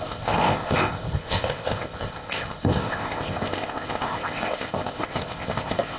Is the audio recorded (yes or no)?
no